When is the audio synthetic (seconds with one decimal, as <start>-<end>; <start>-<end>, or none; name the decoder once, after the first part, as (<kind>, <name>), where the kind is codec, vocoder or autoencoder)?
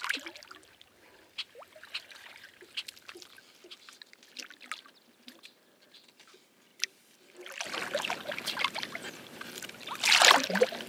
5.0-10.9 (vocoder, BigVGAN v2)